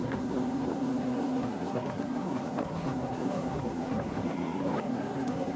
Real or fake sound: fake